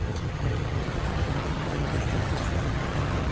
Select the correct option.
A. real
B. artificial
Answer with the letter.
B